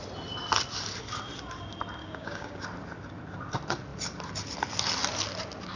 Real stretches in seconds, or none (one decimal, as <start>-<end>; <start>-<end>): 0.0-2.0; 2.6-5.8